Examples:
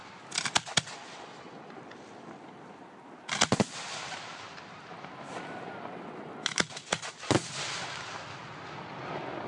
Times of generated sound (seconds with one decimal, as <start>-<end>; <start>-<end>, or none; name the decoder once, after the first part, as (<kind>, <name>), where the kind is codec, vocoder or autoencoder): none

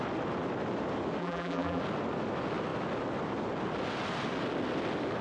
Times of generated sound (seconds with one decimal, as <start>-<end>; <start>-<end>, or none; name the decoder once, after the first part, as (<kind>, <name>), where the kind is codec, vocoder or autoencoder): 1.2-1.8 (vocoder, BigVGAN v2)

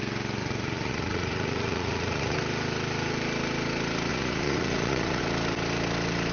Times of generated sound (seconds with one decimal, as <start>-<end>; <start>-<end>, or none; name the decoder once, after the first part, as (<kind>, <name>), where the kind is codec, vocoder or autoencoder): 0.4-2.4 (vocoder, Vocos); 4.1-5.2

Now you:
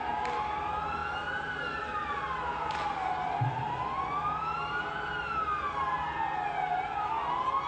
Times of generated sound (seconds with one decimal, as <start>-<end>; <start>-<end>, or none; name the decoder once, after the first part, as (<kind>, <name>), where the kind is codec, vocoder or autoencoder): none